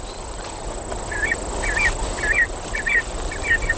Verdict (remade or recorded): recorded